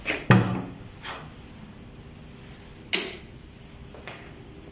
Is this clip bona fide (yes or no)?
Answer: yes